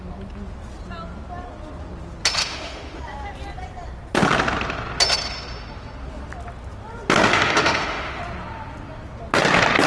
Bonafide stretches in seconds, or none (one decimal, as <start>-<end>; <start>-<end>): 0.0-2.4; 3.0-7.3; 8.2-9.9